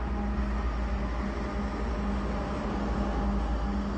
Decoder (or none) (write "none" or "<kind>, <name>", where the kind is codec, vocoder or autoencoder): none